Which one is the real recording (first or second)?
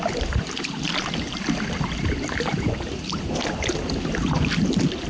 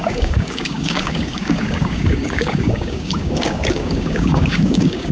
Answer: first